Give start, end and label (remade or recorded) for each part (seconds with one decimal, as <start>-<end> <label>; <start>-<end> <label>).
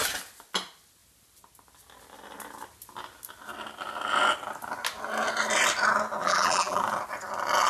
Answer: 0.0-6.2 recorded; 6.2-6.8 remade; 6.8-7.7 recorded